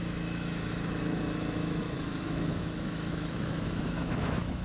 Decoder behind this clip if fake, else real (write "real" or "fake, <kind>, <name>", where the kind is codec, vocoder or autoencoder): fake, autoencoder, DAC-VAE